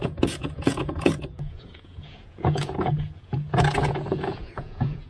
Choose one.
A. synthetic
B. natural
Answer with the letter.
A